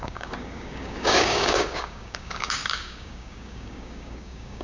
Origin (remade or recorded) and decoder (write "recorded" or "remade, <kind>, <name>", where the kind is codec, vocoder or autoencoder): remade, codec, DAC